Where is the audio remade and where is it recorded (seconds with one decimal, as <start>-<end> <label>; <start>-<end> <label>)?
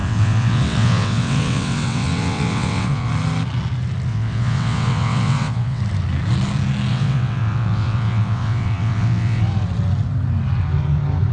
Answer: 0.0-3.1 remade; 3.1-4.1 recorded; 4.1-5.8 remade; 5.8-6.9 recorded; 6.9-9.4 remade; 9.4-11.3 recorded